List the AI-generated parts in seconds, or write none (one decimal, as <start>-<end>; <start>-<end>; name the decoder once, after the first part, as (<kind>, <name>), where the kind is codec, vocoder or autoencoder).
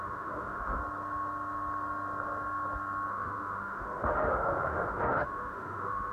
0.0-0.8 (autoencoder, DAC-VAE); 3.1-6.1